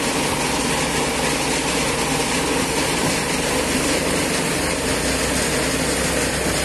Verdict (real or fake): real